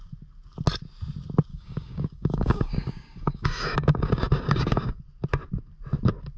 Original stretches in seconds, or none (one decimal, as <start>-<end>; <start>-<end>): 0.0-1.5; 5.0-6.4